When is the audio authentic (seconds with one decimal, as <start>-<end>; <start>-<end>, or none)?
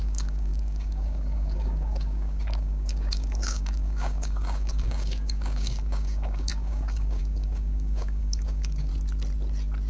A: 8.9-9.9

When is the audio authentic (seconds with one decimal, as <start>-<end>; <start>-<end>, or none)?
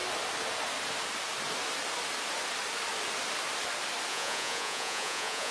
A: 0.0-4.1